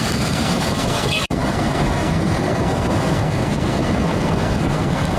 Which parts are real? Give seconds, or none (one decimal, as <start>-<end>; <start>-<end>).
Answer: none